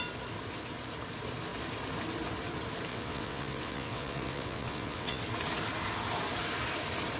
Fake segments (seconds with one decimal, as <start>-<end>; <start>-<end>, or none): 2.9-5.2